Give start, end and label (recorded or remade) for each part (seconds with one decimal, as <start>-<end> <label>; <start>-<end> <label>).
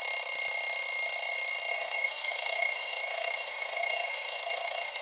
0.0-1.7 recorded; 1.7-5.0 remade